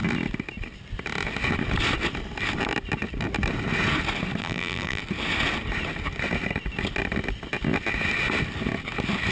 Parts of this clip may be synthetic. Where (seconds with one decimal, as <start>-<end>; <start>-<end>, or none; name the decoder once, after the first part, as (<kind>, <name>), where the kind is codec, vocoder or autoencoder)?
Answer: 4.4-5.0 (vocoder, BigVGAN v2)